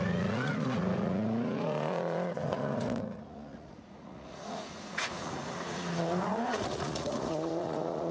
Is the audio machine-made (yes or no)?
yes